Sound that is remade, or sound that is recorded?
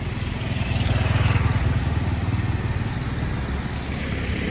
recorded